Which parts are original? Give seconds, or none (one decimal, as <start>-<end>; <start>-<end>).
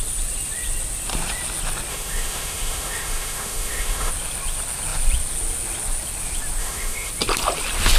0.0-1.9; 4.1-6.6; 7.1-8.0